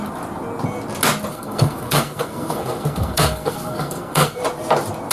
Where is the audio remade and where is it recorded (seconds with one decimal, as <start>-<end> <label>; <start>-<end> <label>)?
0.0-1.3 recorded; 1.3-4.4 remade; 4.4-5.1 recorded